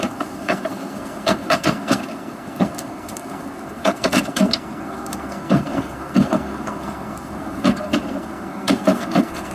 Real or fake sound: fake